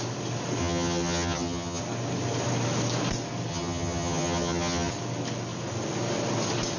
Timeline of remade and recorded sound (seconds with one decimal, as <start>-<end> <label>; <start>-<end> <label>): 0.0-0.6 recorded; 0.6-1.8 remade; 1.8-3.5 recorded; 3.5-4.9 remade; 4.9-6.8 recorded